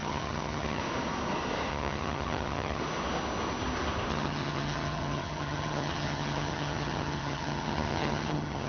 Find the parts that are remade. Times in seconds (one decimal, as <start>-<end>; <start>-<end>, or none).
0.0-0.8; 1.7-2.8; 4.1-8.7